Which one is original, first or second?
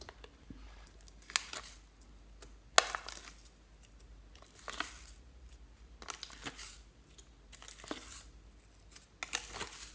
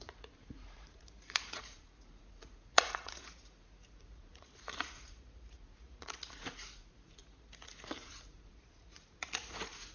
first